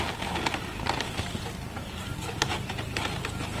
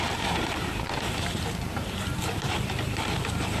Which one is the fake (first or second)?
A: second